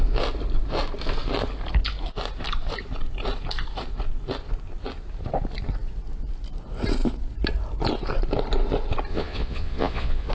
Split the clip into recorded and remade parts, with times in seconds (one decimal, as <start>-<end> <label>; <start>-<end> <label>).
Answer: 0.0-9.1 recorded; 9.1-10.3 remade